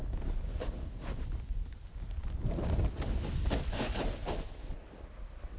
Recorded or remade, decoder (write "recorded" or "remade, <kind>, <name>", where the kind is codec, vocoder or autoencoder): recorded